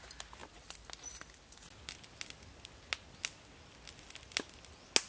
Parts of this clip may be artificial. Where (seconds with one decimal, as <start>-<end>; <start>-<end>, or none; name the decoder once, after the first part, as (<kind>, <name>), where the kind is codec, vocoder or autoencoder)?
none